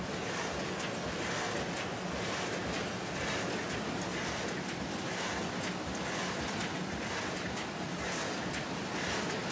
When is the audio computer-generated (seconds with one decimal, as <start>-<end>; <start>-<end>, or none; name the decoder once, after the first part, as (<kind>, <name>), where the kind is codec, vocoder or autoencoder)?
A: none